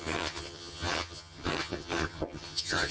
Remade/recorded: remade